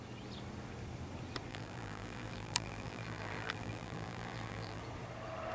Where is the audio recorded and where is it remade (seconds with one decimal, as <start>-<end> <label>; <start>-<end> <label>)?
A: 0.0-1.5 recorded; 1.5-4.8 remade; 4.8-5.5 recorded

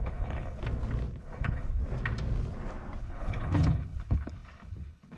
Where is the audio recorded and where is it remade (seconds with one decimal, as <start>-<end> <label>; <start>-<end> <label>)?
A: 0.0-0.6 remade; 0.6-1.2 recorded; 1.2-1.8 remade; 1.8-3.0 recorded; 3.0-5.2 remade

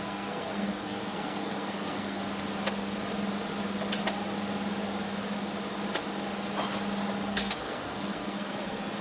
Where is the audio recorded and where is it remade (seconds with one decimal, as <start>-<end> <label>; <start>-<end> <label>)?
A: 0.0-2.2 remade; 2.2-7.3 recorded; 7.3-9.0 remade

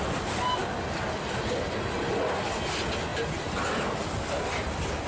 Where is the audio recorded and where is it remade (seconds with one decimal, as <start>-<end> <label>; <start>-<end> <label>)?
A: 0.0-3.1 recorded; 3.1-3.7 remade; 3.7-5.1 recorded

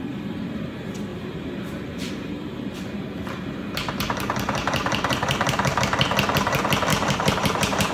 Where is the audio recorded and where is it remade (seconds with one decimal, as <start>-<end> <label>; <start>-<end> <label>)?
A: 0.0-1.1 recorded; 1.1-5.8 remade; 5.8-6.9 recorded; 6.9-7.9 remade

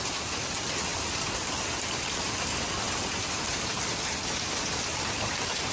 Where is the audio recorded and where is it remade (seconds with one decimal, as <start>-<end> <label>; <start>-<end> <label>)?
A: 0.0-5.7 recorded